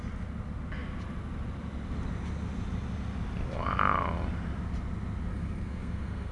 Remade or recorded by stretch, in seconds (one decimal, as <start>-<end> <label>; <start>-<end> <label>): 0.0-5.3 recorded; 5.3-6.3 remade